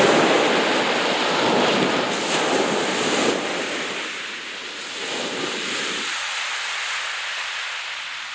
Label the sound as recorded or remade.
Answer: recorded